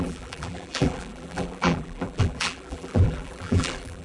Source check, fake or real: fake